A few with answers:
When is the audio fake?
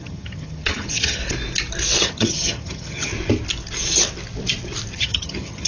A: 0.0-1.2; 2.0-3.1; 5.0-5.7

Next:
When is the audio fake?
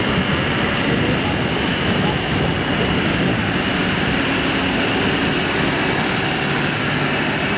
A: 1.7-2.4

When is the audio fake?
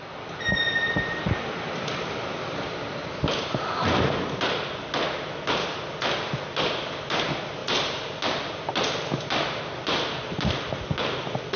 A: none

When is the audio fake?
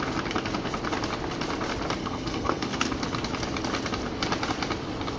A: 2.0-2.9